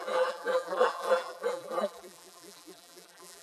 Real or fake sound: fake